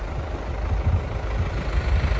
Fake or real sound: real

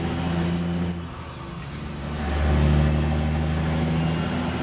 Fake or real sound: real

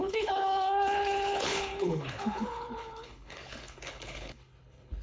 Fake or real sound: fake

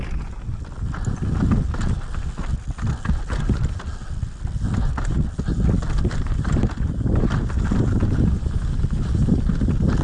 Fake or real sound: real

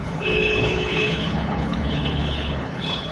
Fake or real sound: fake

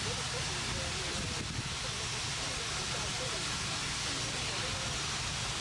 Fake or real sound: real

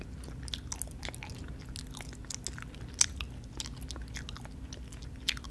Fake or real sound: real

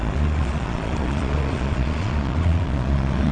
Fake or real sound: fake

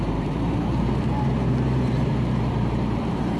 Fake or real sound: fake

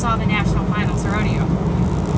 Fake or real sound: real